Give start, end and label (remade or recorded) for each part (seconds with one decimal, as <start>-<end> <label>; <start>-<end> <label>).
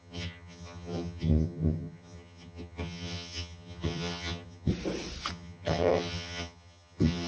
0.0-4.7 remade; 4.7-5.3 recorded; 5.3-7.3 remade